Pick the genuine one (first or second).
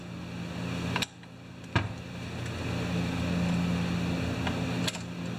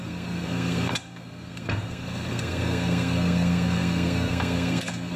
first